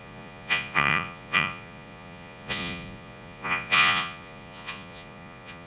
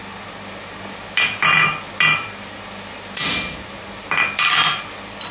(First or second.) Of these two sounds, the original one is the second